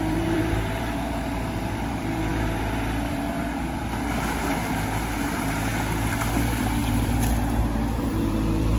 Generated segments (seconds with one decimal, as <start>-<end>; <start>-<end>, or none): 0.0-5.7; 6.3-8.8